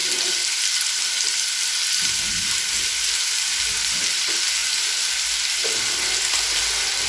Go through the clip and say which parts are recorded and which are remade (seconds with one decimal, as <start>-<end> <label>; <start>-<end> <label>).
0.0-7.1 recorded